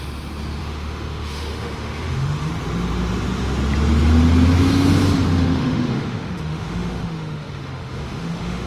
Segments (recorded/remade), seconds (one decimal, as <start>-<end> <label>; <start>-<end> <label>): 0.0-0.6 recorded; 0.6-2.5 remade; 2.5-5.3 recorded; 5.3-8.7 remade